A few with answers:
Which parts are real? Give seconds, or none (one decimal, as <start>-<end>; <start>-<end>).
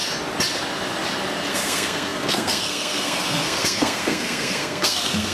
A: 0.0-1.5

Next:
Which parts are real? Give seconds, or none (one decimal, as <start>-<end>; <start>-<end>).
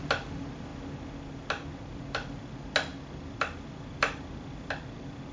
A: 0.0-5.3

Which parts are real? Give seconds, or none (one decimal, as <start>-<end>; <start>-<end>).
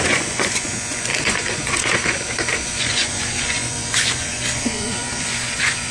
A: none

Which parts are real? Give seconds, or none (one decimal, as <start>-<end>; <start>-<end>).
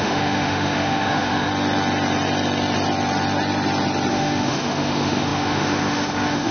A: 1.5-4.1